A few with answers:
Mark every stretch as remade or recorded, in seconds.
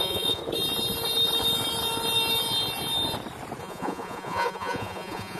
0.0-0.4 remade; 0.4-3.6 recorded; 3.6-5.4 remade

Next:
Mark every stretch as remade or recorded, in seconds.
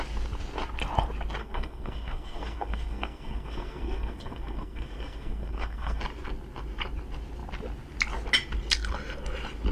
0.0-1.4 recorded; 1.4-6.0 remade; 6.0-9.7 recorded